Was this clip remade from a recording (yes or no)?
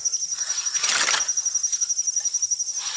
no